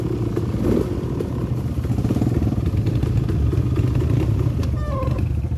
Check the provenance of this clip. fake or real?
real